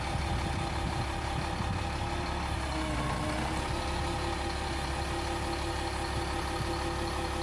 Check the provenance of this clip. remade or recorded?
recorded